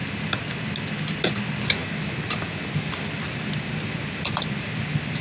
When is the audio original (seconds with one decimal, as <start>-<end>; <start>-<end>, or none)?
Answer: 0.0-5.2

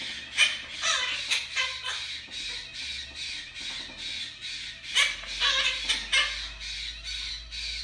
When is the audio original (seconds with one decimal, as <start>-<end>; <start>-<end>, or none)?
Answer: 0.0-7.8

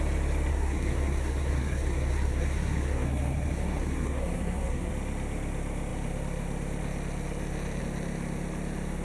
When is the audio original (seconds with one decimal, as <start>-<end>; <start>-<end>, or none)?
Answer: 0.0-0.5; 4.9-9.0

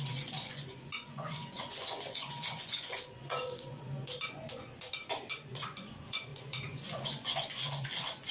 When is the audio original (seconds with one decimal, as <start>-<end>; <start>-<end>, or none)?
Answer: none

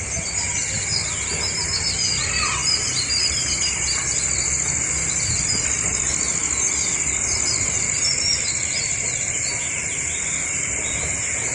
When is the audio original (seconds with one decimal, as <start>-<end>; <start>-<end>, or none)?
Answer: 0.0-11.5

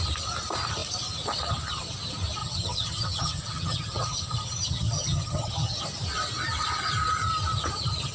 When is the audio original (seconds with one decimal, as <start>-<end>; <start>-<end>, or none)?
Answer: 0.0-2.4; 5.8-8.1

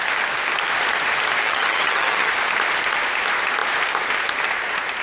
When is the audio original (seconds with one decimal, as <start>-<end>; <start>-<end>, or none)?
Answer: 0.0-1.4; 2.3-5.0